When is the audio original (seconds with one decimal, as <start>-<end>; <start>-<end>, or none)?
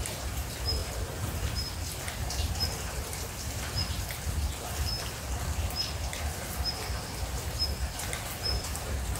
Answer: 0.0-9.2